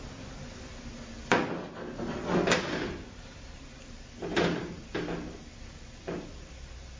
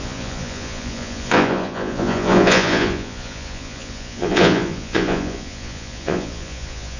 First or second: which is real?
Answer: first